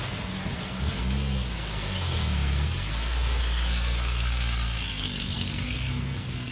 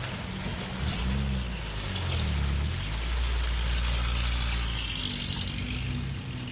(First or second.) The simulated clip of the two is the first